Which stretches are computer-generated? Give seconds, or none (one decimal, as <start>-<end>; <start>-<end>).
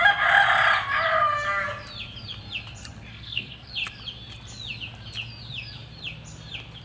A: 3.1-3.7